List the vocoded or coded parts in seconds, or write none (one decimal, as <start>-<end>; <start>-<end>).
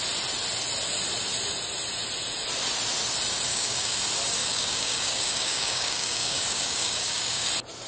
3.5-4.0; 4.4-7.5